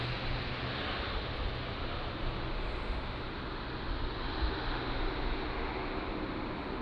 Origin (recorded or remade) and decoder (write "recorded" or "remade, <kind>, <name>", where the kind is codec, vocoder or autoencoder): recorded